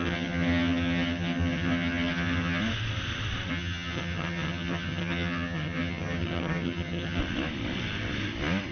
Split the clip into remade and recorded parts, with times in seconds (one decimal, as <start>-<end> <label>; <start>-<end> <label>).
0.0-2.6 remade; 2.6-3.5 recorded; 3.5-7.2 remade; 7.2-8.7 recorded